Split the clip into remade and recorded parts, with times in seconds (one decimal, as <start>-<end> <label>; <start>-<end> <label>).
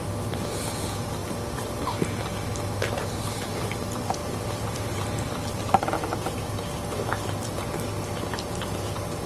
0.0-4.2 recorded; 4.2-6.5 remade; 6.5-9.3 recorded